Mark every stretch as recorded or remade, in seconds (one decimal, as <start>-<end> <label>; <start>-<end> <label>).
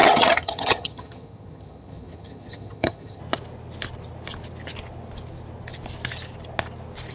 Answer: 0.0-3.2 remade; 3.2-7.1 recorded